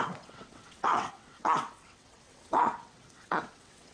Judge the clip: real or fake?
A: fake